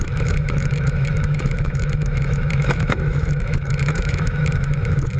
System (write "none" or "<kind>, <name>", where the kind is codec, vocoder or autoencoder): autoencoder, DAC-VAE